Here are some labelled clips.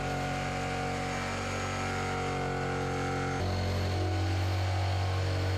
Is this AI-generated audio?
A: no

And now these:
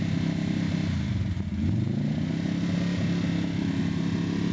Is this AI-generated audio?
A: no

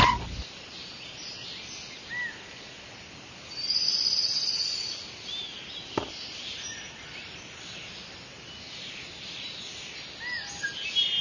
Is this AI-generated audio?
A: no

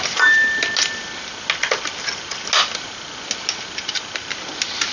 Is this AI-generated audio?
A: no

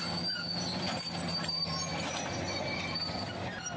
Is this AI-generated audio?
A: no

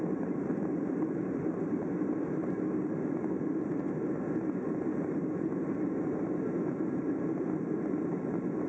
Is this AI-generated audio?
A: no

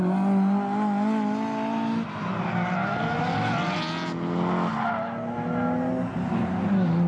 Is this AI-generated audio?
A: no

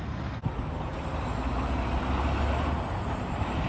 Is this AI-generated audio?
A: no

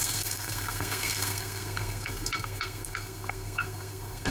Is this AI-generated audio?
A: yes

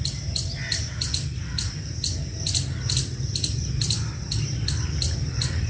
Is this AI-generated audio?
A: no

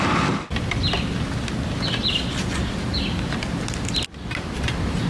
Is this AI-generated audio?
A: no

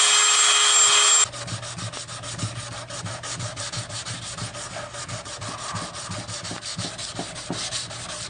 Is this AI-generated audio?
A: no